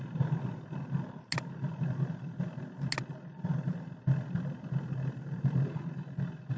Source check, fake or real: real